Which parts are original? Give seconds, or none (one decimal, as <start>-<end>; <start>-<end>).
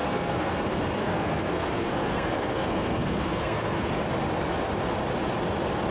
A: 0.5-1.0; 4.0-5.9